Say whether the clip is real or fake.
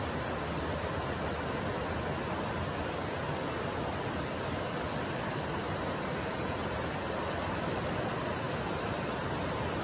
real